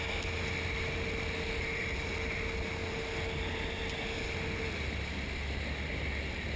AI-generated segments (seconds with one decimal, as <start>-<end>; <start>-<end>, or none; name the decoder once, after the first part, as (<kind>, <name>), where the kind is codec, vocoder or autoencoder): none